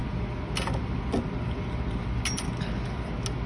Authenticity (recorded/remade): recorded